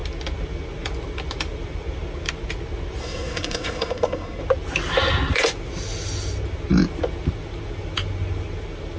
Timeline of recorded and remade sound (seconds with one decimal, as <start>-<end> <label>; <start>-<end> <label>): 0.0-3.0 recorded; 3.0-4.4 remade; 4.4-9.0 recorded